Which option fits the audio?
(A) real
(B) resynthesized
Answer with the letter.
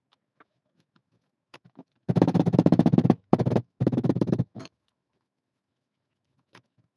B